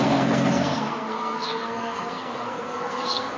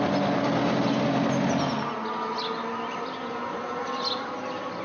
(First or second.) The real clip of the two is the second